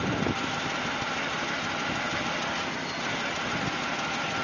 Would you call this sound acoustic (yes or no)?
yes